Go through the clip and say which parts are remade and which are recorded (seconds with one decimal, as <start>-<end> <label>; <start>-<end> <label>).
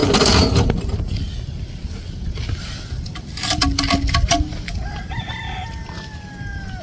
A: 0.0-6.8 recorded